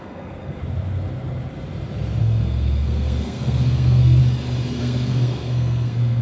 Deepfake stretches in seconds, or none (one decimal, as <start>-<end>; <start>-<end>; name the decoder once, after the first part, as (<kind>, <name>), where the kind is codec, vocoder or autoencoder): 0.0-0.6 (codec, SNAC); 2.2-4.2; 4.8-6.2